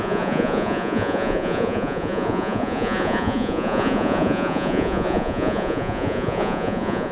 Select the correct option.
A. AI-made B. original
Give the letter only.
A